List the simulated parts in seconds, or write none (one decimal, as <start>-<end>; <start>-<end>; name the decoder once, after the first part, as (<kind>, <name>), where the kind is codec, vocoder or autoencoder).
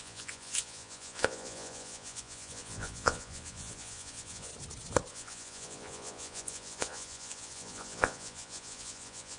0.0-4.5 (vocoder, Vocos); 5.1-9.4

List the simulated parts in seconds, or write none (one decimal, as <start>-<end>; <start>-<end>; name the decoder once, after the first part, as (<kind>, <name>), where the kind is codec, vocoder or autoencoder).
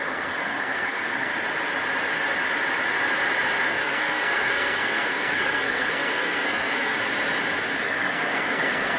0.0-1.3 (codec, SNAC); 3.7-6.9; 7.8-9.0